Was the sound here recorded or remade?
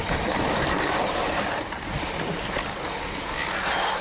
recorded